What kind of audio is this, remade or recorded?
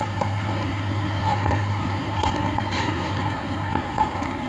remade